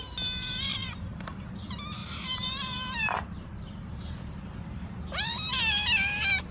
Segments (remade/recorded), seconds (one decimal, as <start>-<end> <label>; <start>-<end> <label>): 0.0-0.7 recorded; 0.7-1.4 remade; 1.4-2.0 recorded; 2.0-5.5 remade; 5.5-6.5 recorded